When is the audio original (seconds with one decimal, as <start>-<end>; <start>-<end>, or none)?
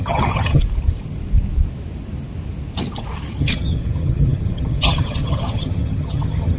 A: 0.6-3.4